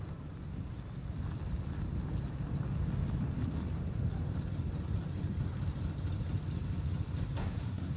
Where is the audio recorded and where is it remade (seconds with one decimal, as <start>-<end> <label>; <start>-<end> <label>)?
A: 0.0-7.4 recorded; 7.4-8.0 remade